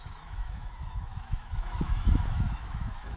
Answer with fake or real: fake